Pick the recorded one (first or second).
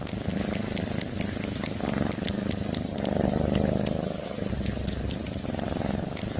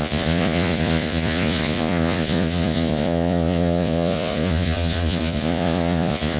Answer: first